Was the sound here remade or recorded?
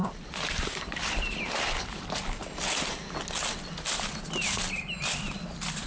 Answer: recorded